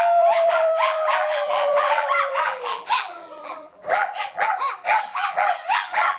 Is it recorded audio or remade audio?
remade